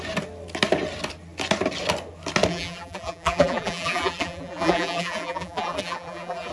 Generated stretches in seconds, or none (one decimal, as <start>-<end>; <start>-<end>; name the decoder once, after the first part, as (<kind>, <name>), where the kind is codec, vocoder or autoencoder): 2.5-6.5 (vocoder, BigVGAN v2)